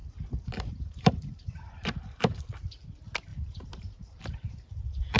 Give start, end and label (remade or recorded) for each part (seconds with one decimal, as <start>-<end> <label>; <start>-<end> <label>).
0.0-2.4 remade; 2.4-3.3 recorded; 3.3-5.2 remade